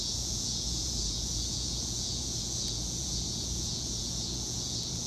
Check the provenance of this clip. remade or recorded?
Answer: remade